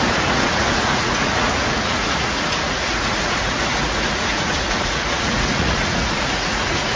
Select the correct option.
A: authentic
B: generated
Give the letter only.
B